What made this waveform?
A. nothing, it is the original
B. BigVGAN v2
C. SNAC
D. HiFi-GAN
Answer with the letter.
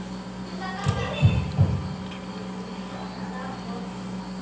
A